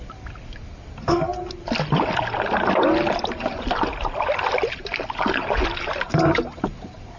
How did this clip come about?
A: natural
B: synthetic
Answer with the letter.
A